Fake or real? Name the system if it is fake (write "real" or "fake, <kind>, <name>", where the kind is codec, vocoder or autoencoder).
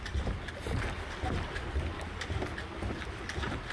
real